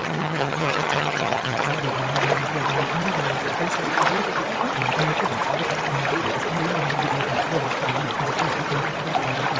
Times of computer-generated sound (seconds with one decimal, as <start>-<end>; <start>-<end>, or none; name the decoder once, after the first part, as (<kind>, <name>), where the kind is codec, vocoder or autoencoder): 0.0-1.7 (vocoder, HiFi-GAN)

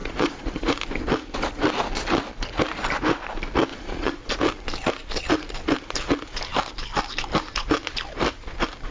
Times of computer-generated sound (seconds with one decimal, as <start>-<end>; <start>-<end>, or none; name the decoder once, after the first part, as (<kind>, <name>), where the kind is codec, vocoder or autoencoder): 0.0-0.7 (vocoder, Vocos); 3.7-4.3

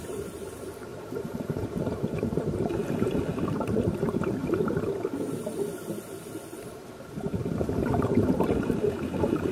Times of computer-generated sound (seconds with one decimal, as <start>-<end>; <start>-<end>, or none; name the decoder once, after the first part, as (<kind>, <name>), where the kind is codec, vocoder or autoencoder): 0.0-4.4 (vocoder, BigVGAN v2); 6.0-9.5

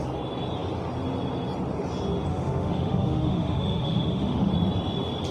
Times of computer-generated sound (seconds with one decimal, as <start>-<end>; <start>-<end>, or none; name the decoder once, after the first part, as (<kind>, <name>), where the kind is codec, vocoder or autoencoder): 2.3-4.5 (autoencoder, DAC-VAE)

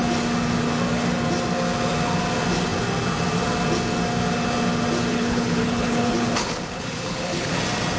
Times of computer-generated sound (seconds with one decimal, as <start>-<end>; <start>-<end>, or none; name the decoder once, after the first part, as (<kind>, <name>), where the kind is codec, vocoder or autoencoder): 5.1-7.5 (codec, HILCodec)

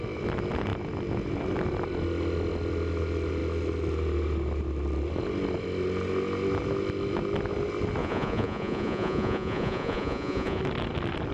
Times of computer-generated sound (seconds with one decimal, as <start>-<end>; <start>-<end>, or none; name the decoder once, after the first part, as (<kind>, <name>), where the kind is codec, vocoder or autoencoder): 8.0-10.6 (vocoder, Vocos)

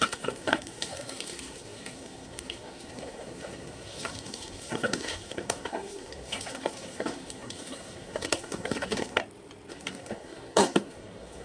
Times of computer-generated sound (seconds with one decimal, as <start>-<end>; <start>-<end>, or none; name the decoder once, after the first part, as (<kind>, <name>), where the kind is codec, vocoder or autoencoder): 0.0-9.2 (codec, SNAC); 9.7-11.4

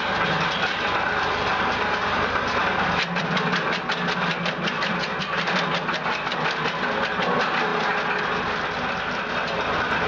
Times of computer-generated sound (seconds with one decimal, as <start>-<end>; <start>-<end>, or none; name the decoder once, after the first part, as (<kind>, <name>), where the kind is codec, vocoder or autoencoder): none